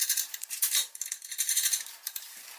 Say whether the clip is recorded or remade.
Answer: remade